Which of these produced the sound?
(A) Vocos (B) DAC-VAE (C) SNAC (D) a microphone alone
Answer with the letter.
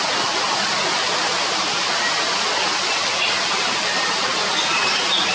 D